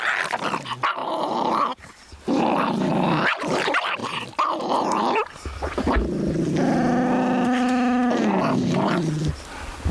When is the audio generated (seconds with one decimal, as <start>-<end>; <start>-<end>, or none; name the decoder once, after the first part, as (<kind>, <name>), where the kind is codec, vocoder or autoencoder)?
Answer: 1.0-1.9 (vocoder, BigVGAN v2)